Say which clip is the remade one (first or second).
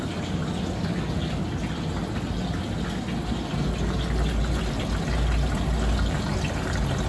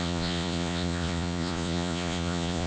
second